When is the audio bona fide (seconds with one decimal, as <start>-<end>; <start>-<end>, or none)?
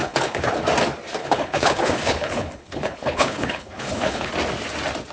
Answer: 0.6-1.2; 4.3-5.1